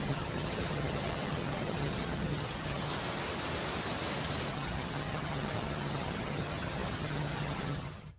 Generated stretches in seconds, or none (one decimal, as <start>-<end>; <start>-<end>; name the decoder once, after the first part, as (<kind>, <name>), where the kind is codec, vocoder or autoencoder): 0.0-2.9 (vocoder, HiFi-GAN); 4.5-8.2